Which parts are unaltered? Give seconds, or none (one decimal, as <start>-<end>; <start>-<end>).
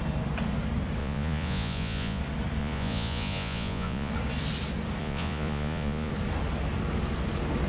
0.0-1.0; 2.2-2.6; 4.1-5.0; 6.1-7.7